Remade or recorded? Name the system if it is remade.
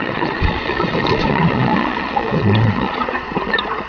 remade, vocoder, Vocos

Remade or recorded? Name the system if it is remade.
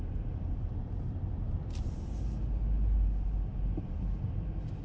recorded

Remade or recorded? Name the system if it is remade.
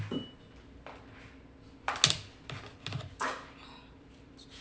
recorded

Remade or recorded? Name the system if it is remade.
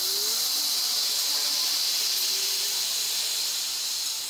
recorded